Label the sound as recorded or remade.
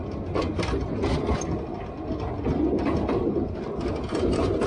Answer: recorded